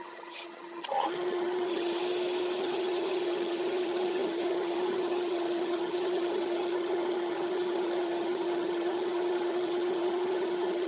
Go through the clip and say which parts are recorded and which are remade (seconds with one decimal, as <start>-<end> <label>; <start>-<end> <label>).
0.0-2.0 remade; 2.0-2.6 recorded; 2.6-10.9 remade